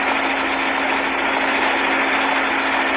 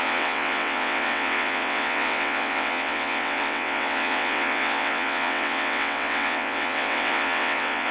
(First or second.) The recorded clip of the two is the first